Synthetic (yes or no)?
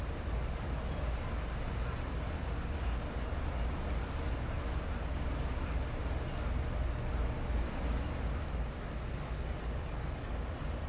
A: no